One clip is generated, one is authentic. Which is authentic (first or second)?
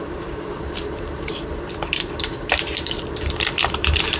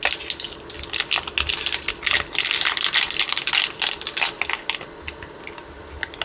second